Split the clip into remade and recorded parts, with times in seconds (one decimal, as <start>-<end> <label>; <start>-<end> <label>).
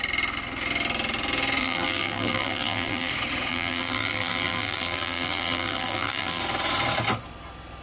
0.0-1.6 recorded; 1.6-3.1 remade; 3.1-3.5 recorded; 3.5-6.4 remade; 6.4-7.8 recorded